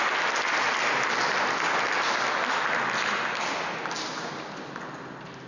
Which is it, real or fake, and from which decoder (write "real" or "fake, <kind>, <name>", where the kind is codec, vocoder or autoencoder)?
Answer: real